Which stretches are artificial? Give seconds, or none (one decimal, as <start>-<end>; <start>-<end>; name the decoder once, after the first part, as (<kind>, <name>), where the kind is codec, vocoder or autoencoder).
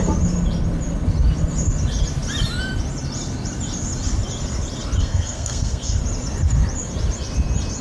5.0-6.0 (codec, SNAC)